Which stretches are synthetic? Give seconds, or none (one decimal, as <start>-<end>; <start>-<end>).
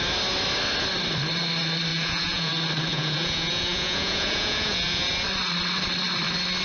1.9-2.5; 2.9-5.1